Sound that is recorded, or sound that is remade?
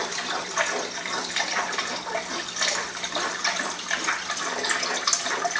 recorded